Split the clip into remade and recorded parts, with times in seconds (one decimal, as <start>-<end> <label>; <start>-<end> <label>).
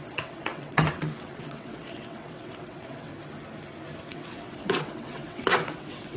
0.0-3.1 remade; 3.1-4.1 recorded; 4.1-6.2 remade